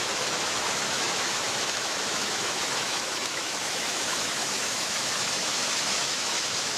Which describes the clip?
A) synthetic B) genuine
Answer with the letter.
A